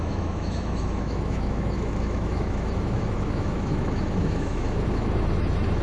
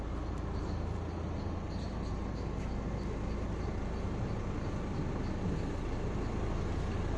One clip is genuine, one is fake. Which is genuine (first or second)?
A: second